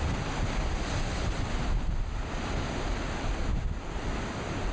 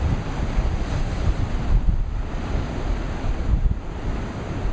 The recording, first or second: first